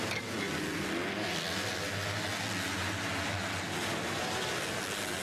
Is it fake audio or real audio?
real